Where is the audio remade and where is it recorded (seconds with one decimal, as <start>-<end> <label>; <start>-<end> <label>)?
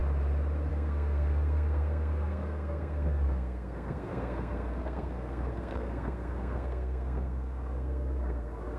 0.0-0.7 recorded; 0.7-8.8 remade